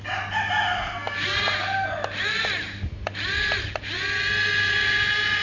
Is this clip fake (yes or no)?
no